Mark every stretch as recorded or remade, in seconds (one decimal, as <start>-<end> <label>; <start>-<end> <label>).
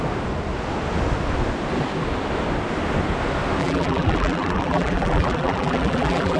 0.0-3.6 recorded; 3.6-6.4 remade